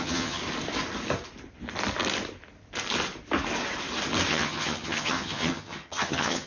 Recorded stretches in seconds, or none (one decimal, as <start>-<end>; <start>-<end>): 0.4-4.3